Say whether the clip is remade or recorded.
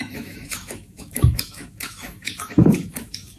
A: remade